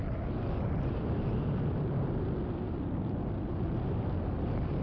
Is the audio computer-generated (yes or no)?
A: no